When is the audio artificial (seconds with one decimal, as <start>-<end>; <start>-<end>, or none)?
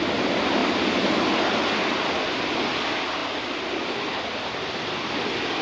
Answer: none